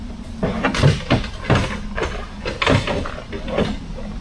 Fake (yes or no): no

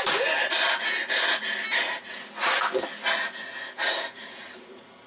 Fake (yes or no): no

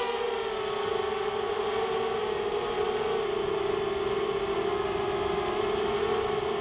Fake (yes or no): no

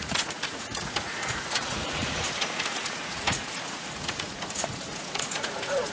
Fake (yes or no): yes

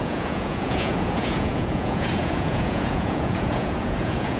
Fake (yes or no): yes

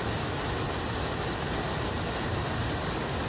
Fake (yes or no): no